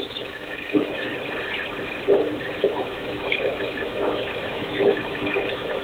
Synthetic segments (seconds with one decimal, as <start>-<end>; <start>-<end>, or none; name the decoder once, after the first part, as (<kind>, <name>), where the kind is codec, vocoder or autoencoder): 0.0-1.1 (autoencoder, DAC-VAE); 2.7-5.8